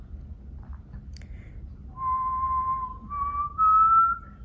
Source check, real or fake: real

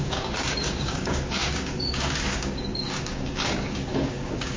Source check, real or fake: fake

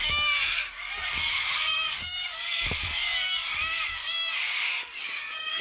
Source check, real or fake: fake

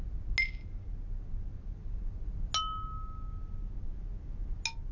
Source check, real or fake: real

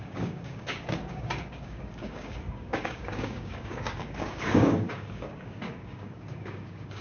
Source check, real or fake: fake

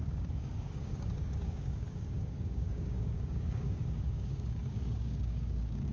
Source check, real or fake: fake